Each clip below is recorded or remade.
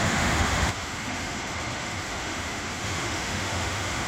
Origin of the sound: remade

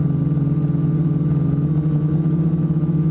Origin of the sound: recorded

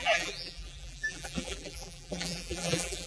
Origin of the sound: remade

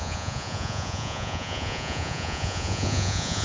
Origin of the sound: remade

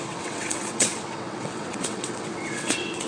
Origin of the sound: remade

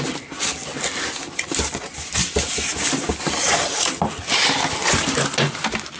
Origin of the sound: recorded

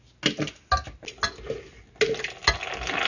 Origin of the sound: recorded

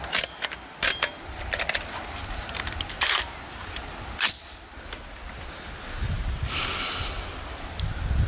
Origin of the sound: recorded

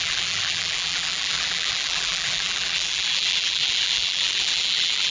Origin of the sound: remade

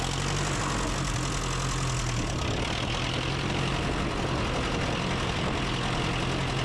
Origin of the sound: recorded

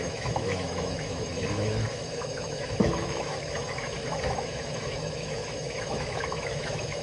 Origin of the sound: remade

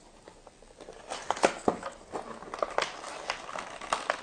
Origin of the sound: recorded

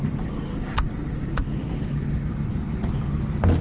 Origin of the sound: recorded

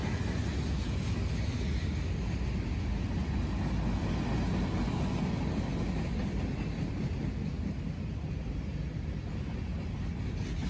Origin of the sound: recorded